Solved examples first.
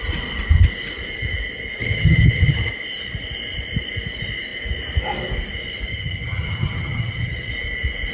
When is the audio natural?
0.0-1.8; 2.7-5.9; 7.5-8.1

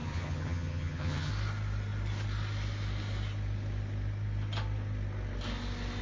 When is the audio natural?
1.3-6.0